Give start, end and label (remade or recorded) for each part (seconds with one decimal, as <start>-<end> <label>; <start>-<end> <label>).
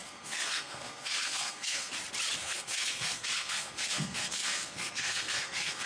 0.0-1.9 remade; 1.9-2.4 recorded; 2.4-5.9 remade